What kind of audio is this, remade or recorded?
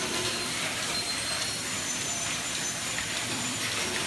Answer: remade